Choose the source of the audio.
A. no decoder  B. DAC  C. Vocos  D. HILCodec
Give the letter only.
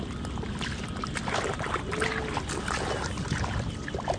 A